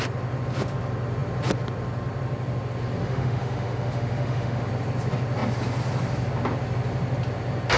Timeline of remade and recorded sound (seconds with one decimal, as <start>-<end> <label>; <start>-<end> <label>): 0.0-3.0 recorded; 3.0-4.7 remade; 4.7-7.8 recorded